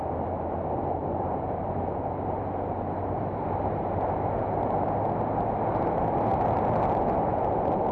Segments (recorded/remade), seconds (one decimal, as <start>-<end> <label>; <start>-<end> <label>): 0.0-1.0 recorded; 1.0-5.0 remade; 5.0-7.9 recorded